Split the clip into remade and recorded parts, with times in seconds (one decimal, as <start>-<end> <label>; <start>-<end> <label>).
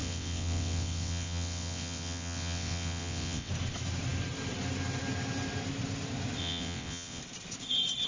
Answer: 0.0-3.5 remade; 3.5-6.4 recorded; 6.4-7.2 remade; 7.2-8.1 recorded